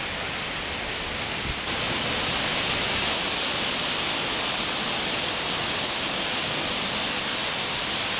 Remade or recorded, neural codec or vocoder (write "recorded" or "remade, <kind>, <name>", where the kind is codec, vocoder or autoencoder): recorded